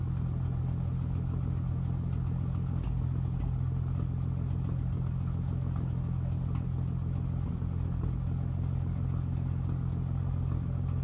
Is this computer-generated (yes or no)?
no